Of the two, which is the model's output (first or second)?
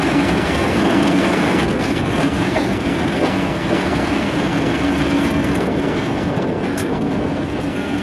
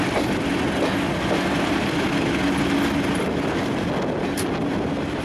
first